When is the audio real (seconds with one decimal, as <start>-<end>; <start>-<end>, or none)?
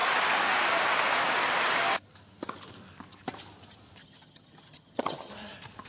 0.0-4.0; 5.3-5.9